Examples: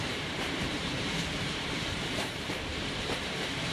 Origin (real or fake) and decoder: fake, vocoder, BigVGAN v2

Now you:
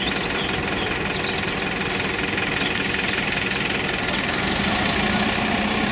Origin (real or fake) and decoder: real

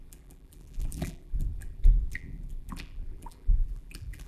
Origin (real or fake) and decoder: fake, vocoder, BigVGAN v2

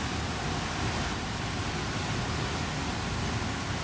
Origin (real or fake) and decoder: real